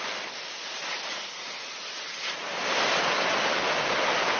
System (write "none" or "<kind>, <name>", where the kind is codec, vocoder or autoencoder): none